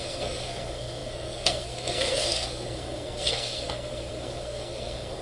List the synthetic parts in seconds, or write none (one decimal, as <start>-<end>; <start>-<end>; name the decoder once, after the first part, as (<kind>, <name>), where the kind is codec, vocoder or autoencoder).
0.0-5.2 (codec, SNAC)